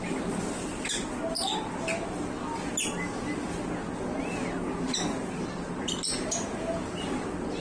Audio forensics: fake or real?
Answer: real